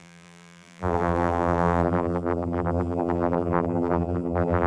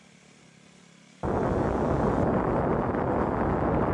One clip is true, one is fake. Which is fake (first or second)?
first